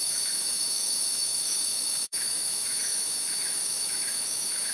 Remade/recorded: remade